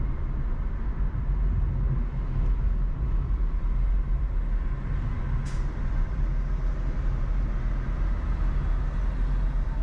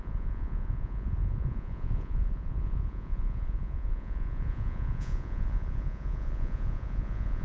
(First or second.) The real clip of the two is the first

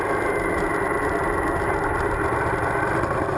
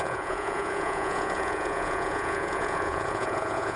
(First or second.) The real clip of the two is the first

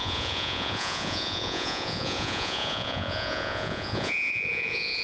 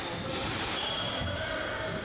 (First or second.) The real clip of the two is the second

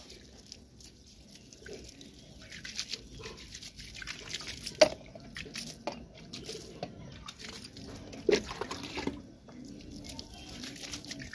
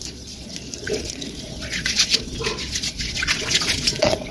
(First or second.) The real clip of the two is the first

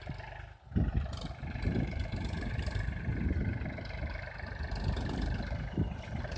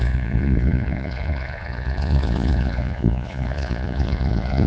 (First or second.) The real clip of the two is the first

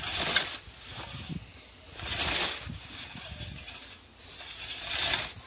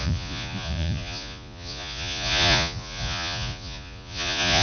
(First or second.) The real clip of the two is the first